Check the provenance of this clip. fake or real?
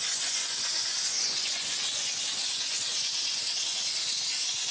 fake